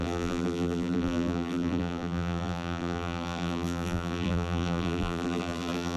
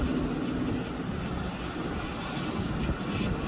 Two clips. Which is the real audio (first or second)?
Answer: second